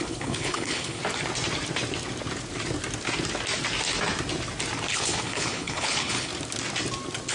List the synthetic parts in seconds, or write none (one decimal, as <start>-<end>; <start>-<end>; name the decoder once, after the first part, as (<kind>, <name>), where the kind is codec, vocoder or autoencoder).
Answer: 0.0-1.0 (codec, HILCodec); 4.9-6.3